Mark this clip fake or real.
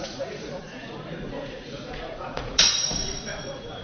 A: fake